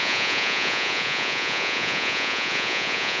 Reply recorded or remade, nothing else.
remade